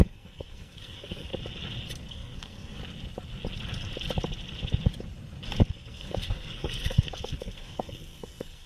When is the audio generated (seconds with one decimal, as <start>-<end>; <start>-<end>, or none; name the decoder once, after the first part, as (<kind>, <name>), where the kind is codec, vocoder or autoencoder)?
0.0-1.3 (codec, SNAC); 2.1-2.8; 5.7-8.7